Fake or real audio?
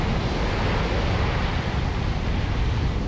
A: real